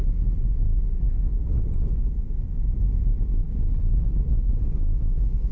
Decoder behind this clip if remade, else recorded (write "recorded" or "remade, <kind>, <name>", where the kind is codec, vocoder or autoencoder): recorded